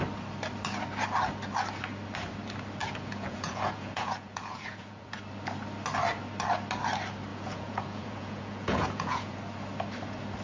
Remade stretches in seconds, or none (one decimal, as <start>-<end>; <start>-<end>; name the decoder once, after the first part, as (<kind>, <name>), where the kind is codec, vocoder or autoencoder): 2.8-5.2 (vocoder, Vocos); 7.3-9.4